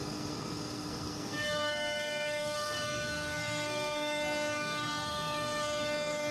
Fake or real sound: fake